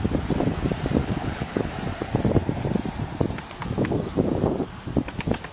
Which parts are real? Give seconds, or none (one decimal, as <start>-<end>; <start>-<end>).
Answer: 0.0-1.0; 1.7-5.5